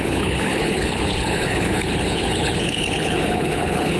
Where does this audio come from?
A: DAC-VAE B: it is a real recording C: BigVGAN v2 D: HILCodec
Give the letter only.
D